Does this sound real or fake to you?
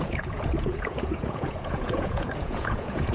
fake